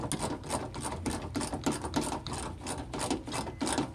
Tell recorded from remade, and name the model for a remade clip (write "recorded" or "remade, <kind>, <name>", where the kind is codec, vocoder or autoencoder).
recorded